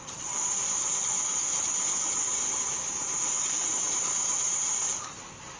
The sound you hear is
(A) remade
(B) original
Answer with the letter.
A